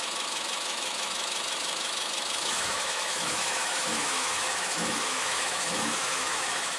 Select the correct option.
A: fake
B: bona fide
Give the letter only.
A